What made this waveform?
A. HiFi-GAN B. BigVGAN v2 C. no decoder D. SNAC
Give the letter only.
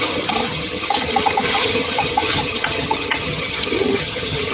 A